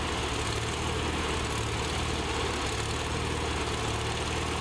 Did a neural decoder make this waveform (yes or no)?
no